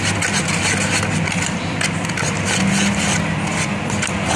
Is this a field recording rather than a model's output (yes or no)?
yes